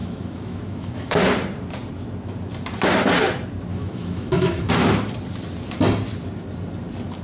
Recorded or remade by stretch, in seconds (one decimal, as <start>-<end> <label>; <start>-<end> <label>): 0.0-1.2 remade; 1.2-3.7 recorded; 3.7-4.7 remade; 4.7-7.2 recorded